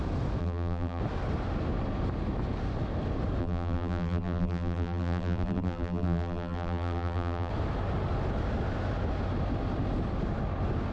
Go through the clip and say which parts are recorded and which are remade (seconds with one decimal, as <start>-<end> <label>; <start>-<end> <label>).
0.0-0.4 recorded; 0.4-1.0 remade; 1.0-3.4 recorded; 3.4-7.5 remade; 7.5-10.9 recorded